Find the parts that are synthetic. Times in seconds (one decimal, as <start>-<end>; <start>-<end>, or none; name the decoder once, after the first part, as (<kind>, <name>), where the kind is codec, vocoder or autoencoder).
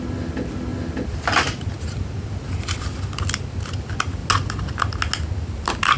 none